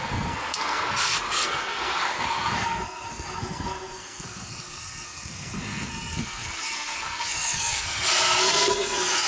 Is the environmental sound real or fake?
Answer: fake